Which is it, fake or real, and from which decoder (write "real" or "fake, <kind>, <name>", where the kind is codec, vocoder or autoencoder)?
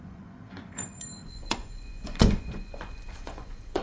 fake, vocoder, Vocos